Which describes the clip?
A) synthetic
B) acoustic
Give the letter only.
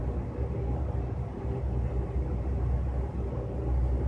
B